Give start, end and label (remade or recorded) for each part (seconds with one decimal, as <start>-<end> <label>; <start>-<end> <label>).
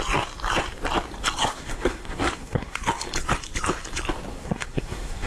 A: 0.0-1.4 recorded; 1.4-2.8 remade; 2.8-4.3 recorded; 4.3-5.3 remade